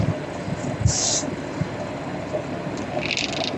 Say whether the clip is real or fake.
real